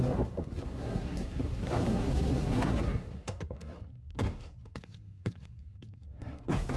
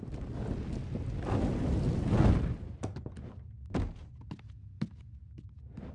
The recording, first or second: second